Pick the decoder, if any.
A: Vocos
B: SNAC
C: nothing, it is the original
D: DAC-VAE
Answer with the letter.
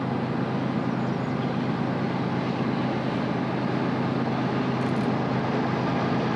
C